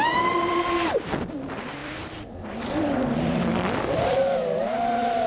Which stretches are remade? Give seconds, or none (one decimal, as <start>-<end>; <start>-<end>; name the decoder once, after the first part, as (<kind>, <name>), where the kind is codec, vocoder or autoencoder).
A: 1.8-4.2 (vocoder, BigVGAN v2)